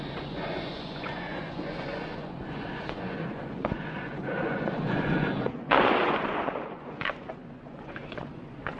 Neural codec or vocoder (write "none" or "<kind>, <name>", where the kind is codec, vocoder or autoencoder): vocoder, Vocos